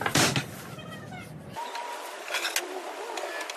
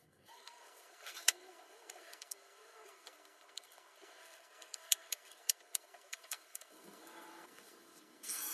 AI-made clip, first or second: second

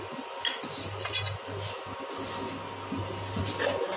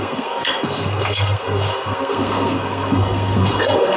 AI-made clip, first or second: second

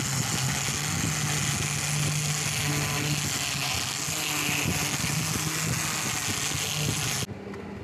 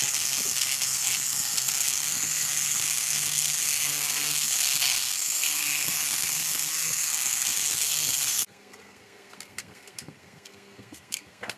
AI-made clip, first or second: second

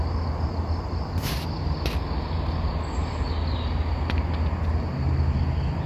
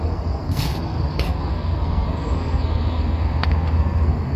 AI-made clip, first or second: second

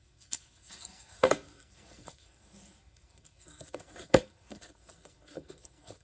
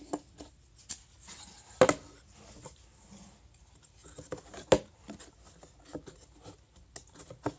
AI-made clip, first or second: first